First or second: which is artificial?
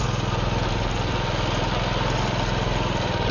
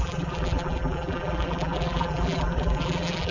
second